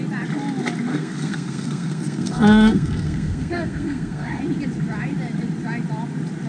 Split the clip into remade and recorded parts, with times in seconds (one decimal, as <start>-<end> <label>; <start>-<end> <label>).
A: 0.0-0.9 recorded; 0.9-4.4 remade; 4.4-6.5 recorded